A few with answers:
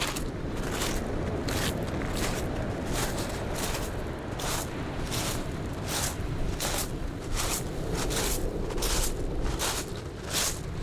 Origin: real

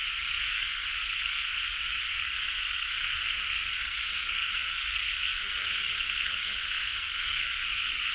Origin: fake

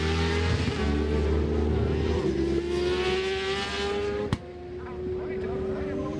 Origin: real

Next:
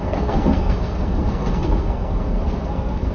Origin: fake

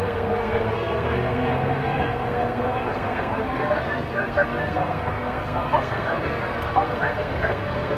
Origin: fake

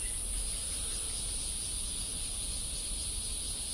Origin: real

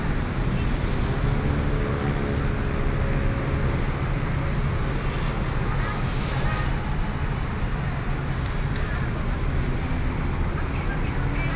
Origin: real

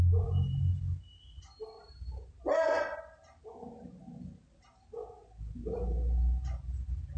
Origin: real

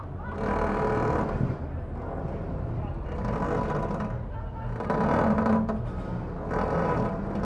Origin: real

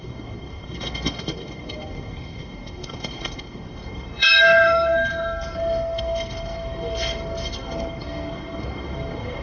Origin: fake